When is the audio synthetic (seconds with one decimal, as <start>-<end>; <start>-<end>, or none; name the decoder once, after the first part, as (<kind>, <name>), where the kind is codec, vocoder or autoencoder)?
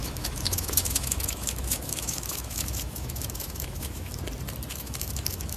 0.0-4.1 (autoencoder, DAC-VAE); 4.7-5.6